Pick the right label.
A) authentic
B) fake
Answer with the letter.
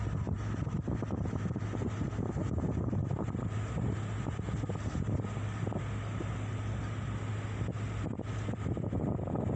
A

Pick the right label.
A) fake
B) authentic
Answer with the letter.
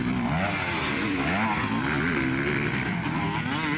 B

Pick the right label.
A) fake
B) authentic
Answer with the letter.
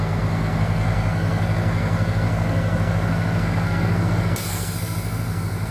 A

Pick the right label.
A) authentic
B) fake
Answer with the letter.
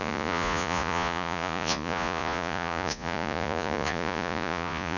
B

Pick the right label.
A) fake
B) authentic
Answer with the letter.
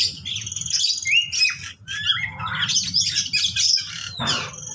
B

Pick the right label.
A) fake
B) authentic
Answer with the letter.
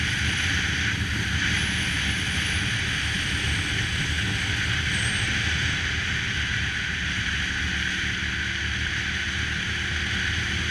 B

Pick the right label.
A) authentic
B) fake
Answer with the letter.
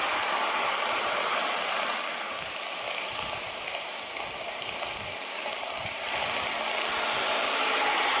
A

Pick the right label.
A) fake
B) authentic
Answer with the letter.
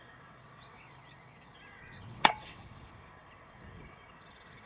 A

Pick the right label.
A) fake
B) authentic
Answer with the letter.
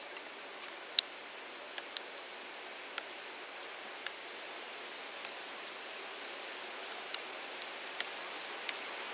B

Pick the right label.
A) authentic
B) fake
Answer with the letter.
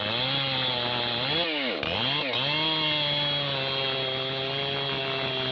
A